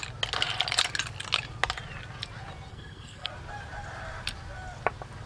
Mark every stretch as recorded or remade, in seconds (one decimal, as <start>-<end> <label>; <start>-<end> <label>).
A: 0.0-2.7 recorded; 2.7-3.3 remade; 3.3-5.3 recorded